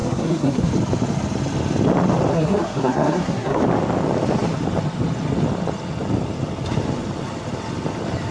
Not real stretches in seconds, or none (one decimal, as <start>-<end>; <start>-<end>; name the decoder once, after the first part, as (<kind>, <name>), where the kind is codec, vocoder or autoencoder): 0.0-0.7 (codec, SNAC); 2.3-3.6